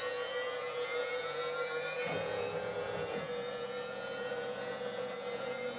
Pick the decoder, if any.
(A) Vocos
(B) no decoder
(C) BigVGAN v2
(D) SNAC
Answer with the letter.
A